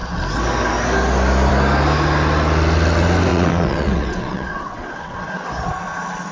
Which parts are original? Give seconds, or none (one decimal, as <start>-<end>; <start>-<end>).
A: 0.0-3.3; 5.2-6.3